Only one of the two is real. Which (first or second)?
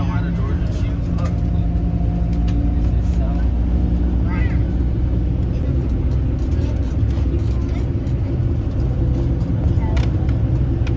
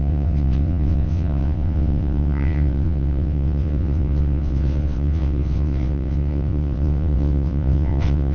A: first